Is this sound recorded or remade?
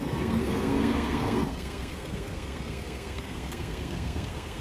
remade